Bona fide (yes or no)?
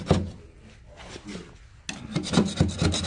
yes